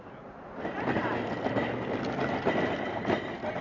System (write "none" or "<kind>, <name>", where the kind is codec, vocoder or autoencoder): none